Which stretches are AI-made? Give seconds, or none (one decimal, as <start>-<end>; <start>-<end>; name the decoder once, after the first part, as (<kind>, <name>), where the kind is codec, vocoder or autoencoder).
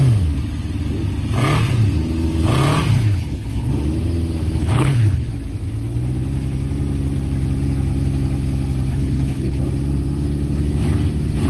2.9-3.7 (codec, HILCodec); 4.6-5.3; 8.9-9.6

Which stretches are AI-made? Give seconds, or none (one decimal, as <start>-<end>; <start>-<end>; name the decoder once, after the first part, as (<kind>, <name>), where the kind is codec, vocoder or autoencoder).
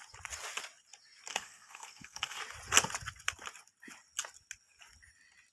1.3-2.4 (codec, SNAC)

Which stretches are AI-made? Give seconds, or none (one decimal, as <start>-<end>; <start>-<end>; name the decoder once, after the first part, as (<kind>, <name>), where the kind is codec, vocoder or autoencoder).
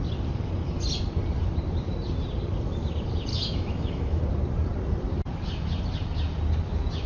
3.3-4.2 (autoencoder, DAC-VAE)